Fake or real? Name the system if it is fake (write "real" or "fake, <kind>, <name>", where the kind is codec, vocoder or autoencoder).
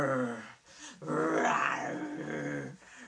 real